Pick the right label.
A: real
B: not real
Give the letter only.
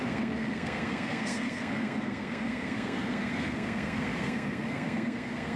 B